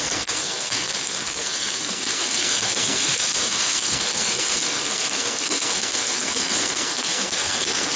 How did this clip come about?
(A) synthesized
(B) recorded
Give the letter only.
A